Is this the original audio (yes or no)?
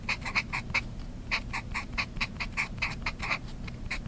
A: no